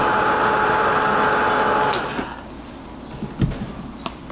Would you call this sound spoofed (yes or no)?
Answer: no